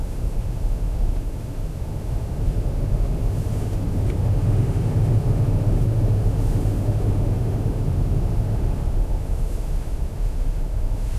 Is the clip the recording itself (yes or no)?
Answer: no